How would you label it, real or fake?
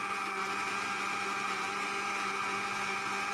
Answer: real